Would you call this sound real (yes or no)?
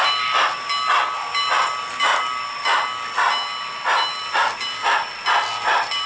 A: yes